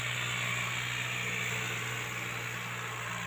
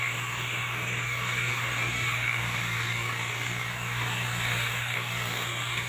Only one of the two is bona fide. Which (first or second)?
first